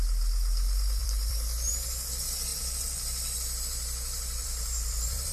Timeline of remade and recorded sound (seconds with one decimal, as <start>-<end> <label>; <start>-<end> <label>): 0.0-1.0 recorded; 1.0-1.7 remade; 1.7-4.4 recorded; 4.4-5.3 remade